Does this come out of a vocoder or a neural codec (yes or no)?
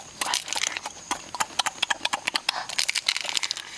no